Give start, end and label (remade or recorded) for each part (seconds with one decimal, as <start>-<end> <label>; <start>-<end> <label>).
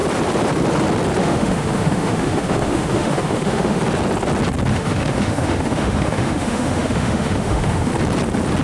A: 0.0-1.2 recorded; 1.2-3.8 remade; 3.8-4.7 recorded; 4.7-7.9 remade; 7.9-8.6 recorded